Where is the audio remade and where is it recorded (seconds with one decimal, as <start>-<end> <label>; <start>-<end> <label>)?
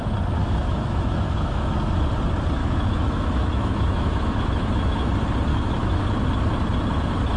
0.0-0.4 recorded; 0.4-1.7 remade; 1.7-2.6 recorded; 2.6-5.1 remade; 5.1-5.5 recorded; 5.5-6.0 remade; 6.0-7.4 recorded